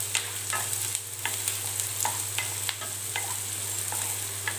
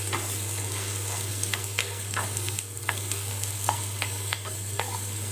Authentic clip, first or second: first